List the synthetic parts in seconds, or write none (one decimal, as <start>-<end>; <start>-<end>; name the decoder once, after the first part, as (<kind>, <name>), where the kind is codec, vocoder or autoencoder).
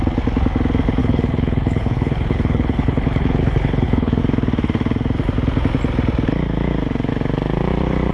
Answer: 1.0-4.2 (codec, HILCodec)